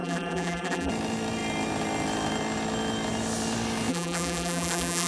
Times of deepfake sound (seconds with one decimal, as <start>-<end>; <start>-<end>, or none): 0.0-0.9; 3.9-5.1